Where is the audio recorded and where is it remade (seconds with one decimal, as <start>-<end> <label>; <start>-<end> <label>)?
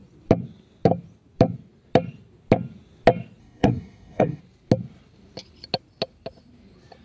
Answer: 0.0-3.4 recorded; 3.4-4.4 remade; 4.4-7.0 recorded